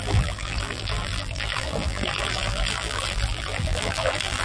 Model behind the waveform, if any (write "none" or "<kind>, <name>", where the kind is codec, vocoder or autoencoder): vocoder, BigVGAN v2